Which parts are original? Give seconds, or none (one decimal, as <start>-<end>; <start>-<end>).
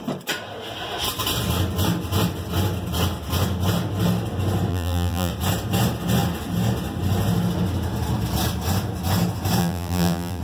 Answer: 0.0-4.7; 5.3-9.6